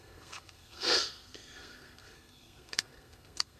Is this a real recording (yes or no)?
no